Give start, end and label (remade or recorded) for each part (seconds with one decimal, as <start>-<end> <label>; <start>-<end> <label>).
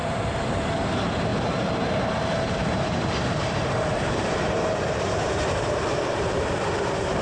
0.0-7.2 remade